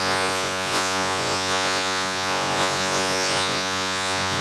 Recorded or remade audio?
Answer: remade